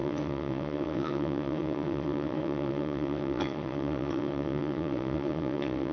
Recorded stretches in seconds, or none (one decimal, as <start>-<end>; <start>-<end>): none